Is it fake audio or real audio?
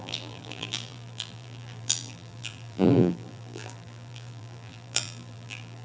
fake